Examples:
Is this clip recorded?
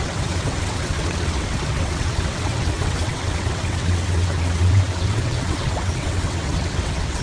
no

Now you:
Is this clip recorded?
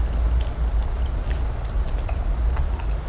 yes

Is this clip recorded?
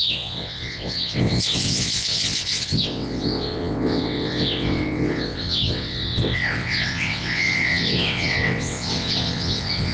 no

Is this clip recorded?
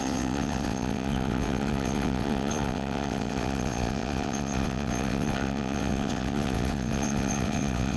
no